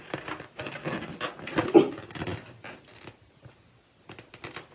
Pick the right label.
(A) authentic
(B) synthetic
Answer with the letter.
A